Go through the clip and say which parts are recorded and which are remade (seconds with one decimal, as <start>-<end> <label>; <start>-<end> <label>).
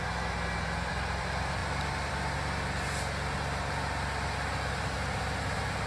0.0-5.9 recorded